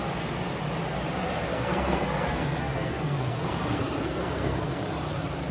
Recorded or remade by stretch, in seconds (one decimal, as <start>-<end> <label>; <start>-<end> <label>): 0.0-1.5 recorded; 1.5-4.8 remade; 4.8-5.5 recorded